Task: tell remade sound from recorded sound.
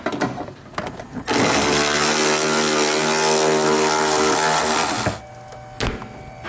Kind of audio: recorded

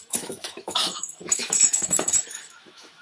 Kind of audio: remade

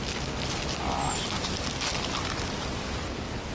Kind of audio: recorded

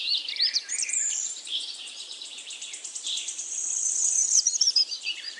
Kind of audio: remade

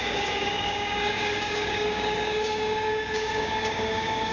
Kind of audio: remade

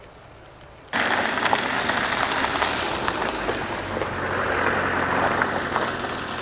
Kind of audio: recorded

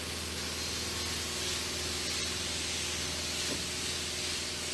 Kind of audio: recorded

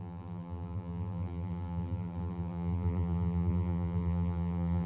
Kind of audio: remade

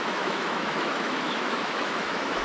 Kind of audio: remade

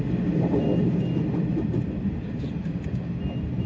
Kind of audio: recorded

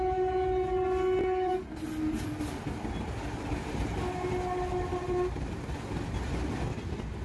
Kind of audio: recorded